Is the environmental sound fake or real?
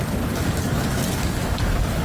fake